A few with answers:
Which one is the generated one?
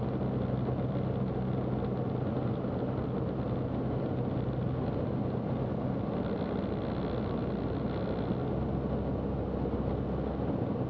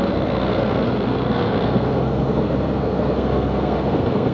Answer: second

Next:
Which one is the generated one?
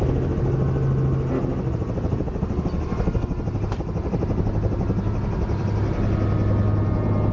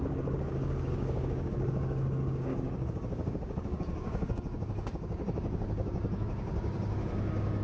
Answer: second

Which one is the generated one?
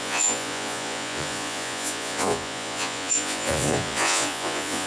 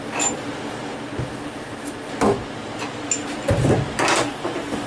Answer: first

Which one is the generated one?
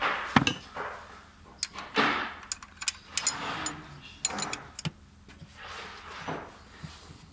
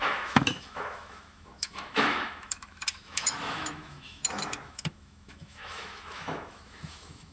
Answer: second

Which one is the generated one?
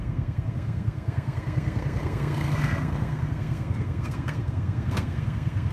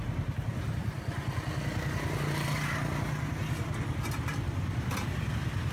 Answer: first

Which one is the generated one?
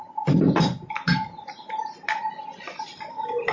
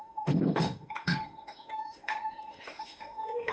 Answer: second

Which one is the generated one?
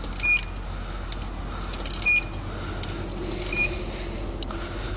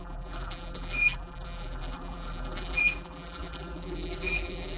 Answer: second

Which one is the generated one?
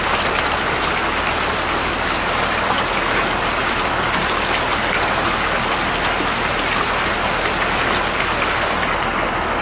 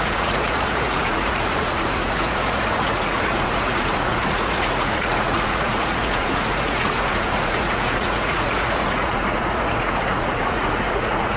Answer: second